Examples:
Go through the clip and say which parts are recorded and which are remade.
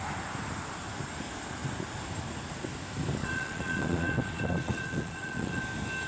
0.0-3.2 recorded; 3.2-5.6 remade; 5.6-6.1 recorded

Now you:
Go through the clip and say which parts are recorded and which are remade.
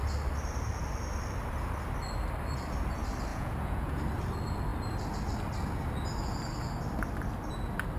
0.0-3.3 recorded; 3.3-4.0 remade; 4.0-8.0 recorded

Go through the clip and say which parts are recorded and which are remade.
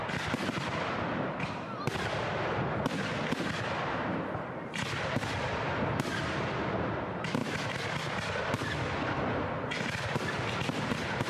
0.0-11.3 recorded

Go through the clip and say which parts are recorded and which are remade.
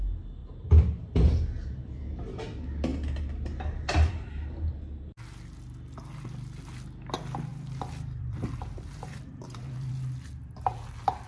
0.0-0.4 recorded; 0.4-1.0 remade; 1.0-7.5 recorded; 7.5-9.9 remade; 9.9-11.3 recorded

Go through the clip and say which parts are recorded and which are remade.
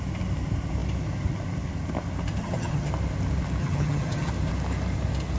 0.0-2.4 recorded; 2.4-2.9 remade; 2.9-3.6 recorded; 3.6-4.3 remade; 4.3-5.4 recorded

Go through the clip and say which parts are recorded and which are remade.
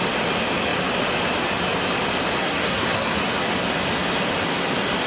0.0-2.4 recorded; 2.4-3.2 remade; 3.2-5.1 recorded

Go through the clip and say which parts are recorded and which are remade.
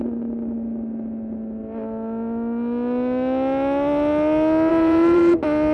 0.0-4.7 recorded; 4.7-5.3 remade; 5.3-5.7 recorded